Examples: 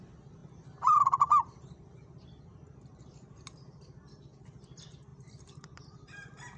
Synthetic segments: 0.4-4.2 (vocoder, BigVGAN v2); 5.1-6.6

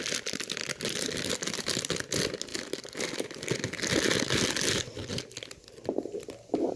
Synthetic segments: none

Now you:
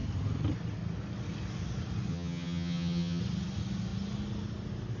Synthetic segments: 2.1-3.2 (vocoder, HiFi-GAN)

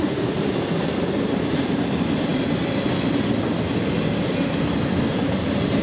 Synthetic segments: none

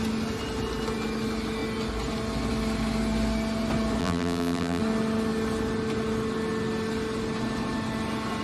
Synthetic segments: 4.0-4.8 (vocoder, BigVGAN v2)